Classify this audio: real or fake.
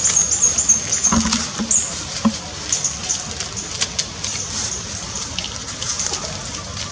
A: real